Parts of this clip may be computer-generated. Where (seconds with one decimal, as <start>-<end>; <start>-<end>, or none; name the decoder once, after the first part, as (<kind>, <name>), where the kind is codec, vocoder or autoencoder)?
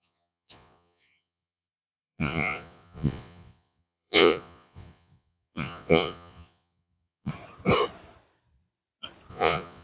0.0-7.3 (vocoder, Vocos); 9.3-9.8